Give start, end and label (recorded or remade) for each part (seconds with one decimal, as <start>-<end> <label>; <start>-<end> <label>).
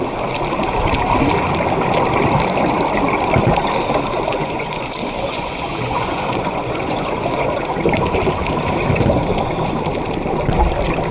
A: 0.0-4.3 recorded; 4.3-7.8 remade; 7.8-11.1 recorded